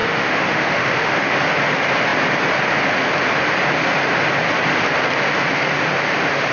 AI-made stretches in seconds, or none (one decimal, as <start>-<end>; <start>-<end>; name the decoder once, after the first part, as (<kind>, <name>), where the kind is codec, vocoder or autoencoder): 0.0-1.3 (autoencoder, DAC-VAE)